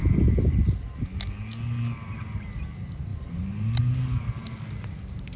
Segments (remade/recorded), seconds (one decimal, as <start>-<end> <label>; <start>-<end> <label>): 0.0-3.1 recorded; 3.1-3.8 remade; 3.8-5.4 recorded